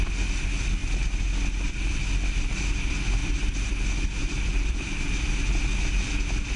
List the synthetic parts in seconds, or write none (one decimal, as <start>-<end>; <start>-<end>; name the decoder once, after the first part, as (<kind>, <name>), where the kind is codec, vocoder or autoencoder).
3.2-3.7 (vocoder, BigVGAN v2); 4.2-5.4

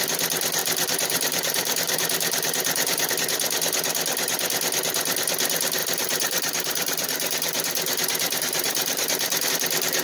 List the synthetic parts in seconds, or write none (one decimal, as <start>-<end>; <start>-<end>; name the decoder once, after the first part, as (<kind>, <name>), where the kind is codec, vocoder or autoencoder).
0.6-3.1 (vocoder, BigVGAN v2); 5.8-9.5

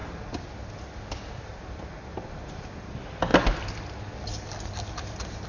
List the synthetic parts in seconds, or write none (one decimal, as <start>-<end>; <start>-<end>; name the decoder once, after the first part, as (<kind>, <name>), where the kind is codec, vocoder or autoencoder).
2.1-2.7 (vocoder, BigVGAN v2)